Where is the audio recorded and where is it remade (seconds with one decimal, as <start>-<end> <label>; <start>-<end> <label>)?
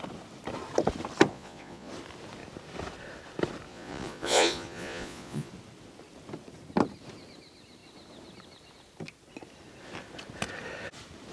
0.0-1.3 recorded; 1.3-1.9 remade; 1.9-3.7 recorded; 3.7-5.5 remade; 5.5-11.3 recorded